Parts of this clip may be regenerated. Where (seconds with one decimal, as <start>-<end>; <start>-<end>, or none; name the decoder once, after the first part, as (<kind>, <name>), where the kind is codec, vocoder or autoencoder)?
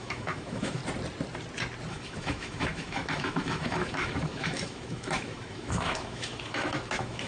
0.0-0.8 (autoencoder, DAC-VAE); 1.9-7.3